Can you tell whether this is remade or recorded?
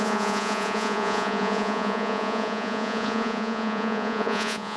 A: remade